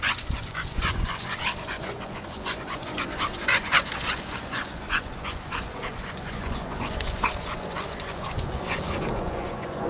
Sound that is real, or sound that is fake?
fake